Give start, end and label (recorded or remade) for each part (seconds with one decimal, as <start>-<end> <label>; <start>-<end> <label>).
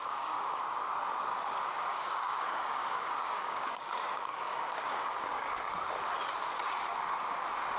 0.0-0.6 remade; 0.6-1.9 recorded; 1.9-3.8 remade; 3.8-4.3 recorded; 4.3-5.5 remade; 5.5-7.8 recorded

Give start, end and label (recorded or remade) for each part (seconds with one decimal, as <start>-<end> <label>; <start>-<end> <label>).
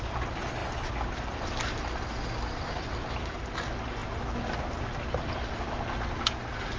0.0-6.8 recorded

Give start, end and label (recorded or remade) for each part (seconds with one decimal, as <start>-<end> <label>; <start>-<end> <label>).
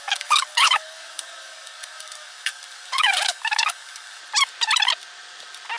0.0-4.2 remade; 4.2-5.8 recorded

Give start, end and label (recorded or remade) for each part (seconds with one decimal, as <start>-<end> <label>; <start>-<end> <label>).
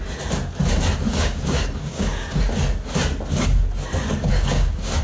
0.0-1.1 recorded; 1.1-2.4 remade; 2.4-4.3 recorded; 4.3-5.0 remade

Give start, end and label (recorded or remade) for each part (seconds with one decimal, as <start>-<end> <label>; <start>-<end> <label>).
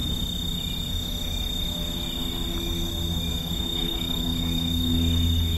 0.0-3.3 recorded; 3.3-4.9 remade; 4.9-5.6 recorded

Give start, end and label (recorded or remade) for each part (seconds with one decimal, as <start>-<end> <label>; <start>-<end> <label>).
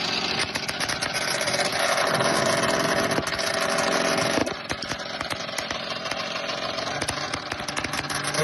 0.0-8.4 recorded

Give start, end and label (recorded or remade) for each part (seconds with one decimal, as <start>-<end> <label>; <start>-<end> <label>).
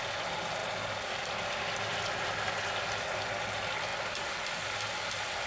0.0-5.5 recorded